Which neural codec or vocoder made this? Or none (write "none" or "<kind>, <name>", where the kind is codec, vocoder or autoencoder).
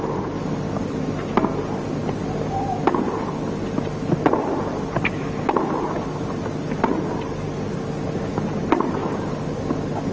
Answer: vocoder, BigVGAN v2